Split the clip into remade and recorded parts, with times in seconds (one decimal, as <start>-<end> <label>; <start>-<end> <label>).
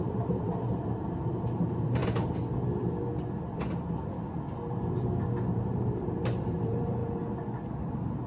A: 0.0-2.0 remade; 2.0-5.5 recorded; 5.5-7.0 remade; 7.0-7.8 recorded; 7.8-8.3 remade